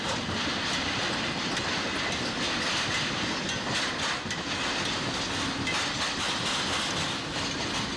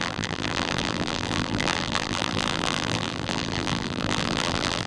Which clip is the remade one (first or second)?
second